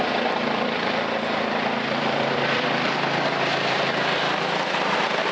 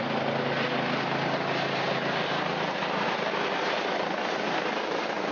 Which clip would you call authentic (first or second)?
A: second